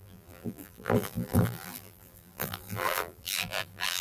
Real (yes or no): no